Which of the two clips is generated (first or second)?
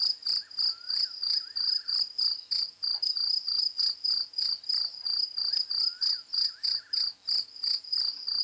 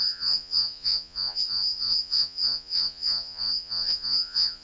second